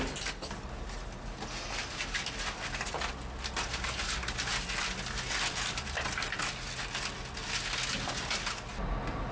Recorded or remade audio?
recorded